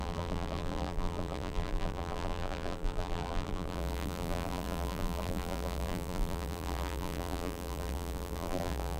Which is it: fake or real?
fake